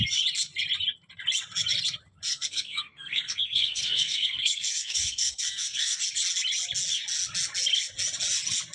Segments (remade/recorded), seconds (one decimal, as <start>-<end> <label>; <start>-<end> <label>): 0.0-2.3 recorded; 2.3-6.0 remade; 6.0-8.7 recorded